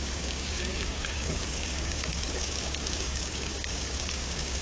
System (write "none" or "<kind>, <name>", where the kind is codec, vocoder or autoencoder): codec, DAC